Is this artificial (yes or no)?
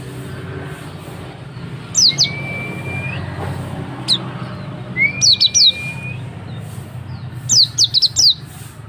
no